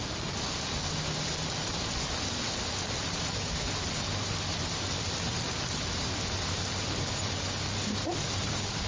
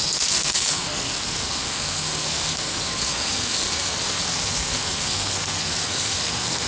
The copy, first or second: second